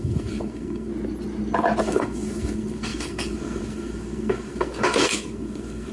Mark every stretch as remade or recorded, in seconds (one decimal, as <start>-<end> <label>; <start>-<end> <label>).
0.0-0.9 remade; 0.9-1.8 recorded; 1.8-5.9 remade